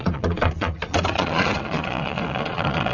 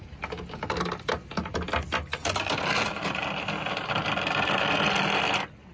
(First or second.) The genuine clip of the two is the second